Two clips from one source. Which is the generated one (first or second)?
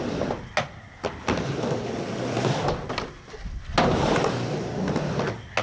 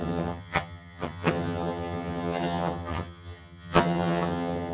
second